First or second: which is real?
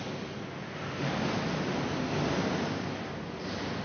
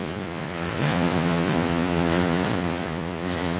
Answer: first